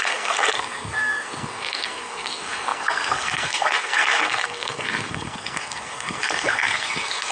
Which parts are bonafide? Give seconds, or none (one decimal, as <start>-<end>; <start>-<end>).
none

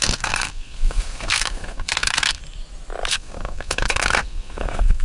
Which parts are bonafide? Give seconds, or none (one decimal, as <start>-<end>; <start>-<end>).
2.4-3.1

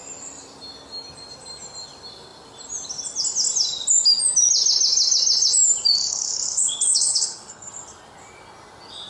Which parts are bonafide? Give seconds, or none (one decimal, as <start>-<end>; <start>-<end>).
0.0-6.0; 7.7-9.1

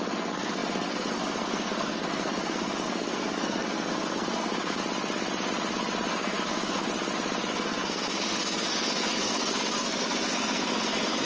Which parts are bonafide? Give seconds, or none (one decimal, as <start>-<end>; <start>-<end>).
4.8-6.1; 6.9-7.5

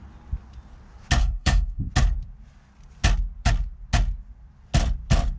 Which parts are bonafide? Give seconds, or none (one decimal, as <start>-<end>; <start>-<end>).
0.0-1.2; 1.9-5.4

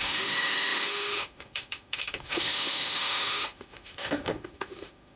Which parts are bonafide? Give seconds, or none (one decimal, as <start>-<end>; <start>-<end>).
none

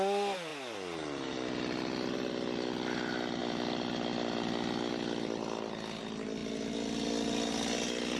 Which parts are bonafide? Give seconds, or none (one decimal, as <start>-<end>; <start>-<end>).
0.0-8.2

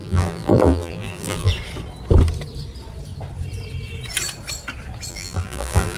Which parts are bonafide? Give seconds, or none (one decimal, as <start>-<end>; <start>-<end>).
1.5-5.1